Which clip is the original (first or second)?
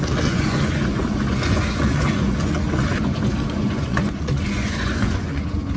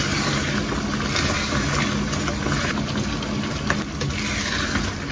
second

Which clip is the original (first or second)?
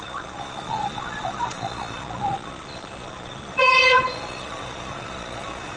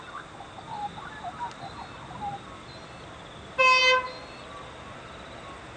second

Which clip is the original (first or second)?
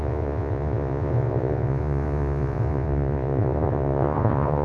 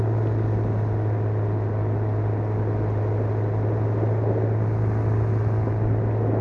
second